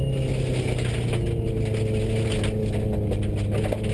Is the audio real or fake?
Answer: real